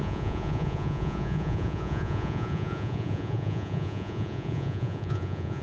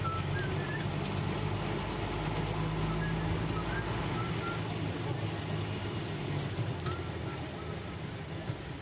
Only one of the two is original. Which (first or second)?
second